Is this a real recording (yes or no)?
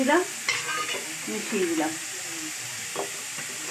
yes